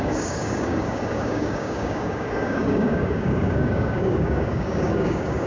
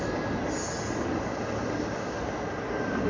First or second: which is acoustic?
second